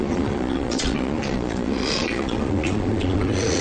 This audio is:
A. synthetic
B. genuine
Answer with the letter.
A